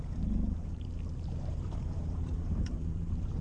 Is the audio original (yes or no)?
no